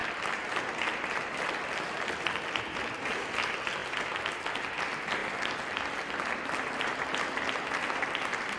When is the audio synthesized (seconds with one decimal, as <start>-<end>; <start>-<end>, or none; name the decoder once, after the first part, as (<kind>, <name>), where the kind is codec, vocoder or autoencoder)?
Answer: none